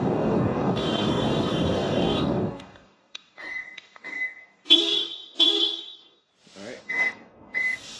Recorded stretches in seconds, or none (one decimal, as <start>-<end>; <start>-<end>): 6.3-6.8